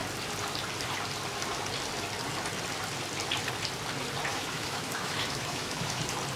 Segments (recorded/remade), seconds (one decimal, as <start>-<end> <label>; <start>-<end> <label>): 0.0-4.3 recorded; 4.3-6.0 remade; 6.0-6.4 recorded